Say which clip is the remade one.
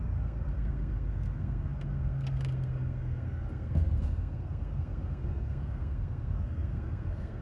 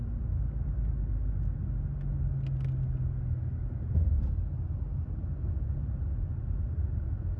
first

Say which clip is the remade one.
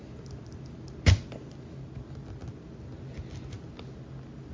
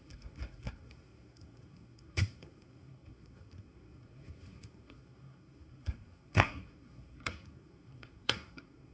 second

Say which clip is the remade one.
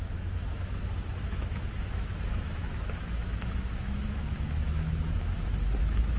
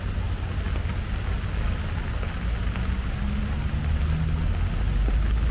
first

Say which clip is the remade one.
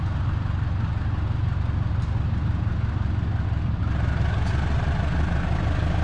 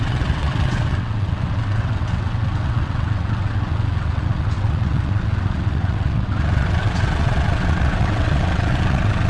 second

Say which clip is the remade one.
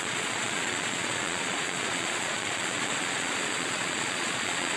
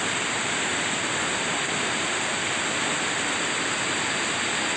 first